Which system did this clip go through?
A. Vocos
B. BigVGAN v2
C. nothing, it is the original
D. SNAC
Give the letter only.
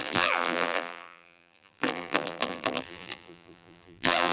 B